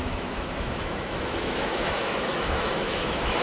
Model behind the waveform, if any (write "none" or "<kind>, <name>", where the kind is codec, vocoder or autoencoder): autoencoder, DAC-VAE